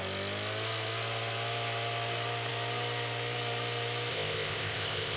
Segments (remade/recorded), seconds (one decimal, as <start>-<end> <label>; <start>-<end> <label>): 0.0-4.1 recorded; 4.1-5.2 remade